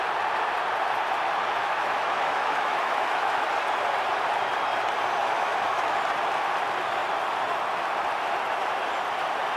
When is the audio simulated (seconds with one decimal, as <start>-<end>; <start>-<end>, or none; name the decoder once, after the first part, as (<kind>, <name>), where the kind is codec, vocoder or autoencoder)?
1.6-3.5 (autoencoder, DAC-VAE); 5.2-6.0